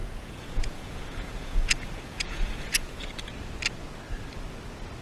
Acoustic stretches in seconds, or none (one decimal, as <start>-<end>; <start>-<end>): 3.0-5.0